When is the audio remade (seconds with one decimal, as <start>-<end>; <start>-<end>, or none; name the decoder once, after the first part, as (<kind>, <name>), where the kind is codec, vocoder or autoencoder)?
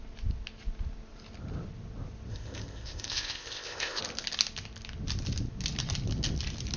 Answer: 2.3-4.0 (codec, ZipCodec)